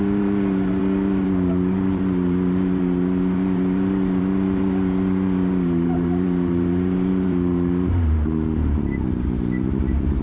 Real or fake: fake